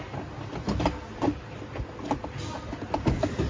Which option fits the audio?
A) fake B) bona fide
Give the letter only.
B